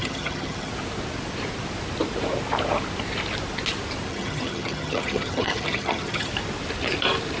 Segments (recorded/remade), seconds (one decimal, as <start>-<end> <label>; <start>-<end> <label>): 0.0-0.7 remade; 0.7-4.1 recorded; 4.1-6.3 remade; 6.3-7.4 recorded